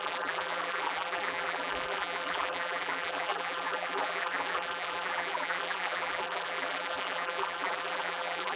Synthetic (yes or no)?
yes